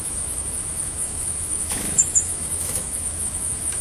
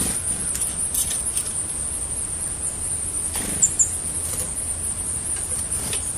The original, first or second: second